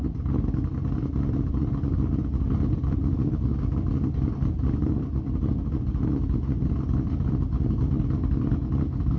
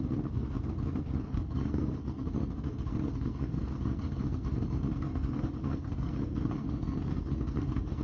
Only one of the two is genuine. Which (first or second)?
first